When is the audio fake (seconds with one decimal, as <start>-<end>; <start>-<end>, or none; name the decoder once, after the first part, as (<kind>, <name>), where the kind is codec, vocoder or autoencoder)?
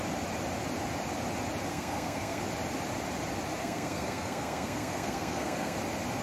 1.7-2.4 (codec, SNAC); 3.6-5.8